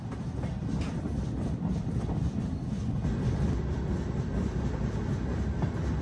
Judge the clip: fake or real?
real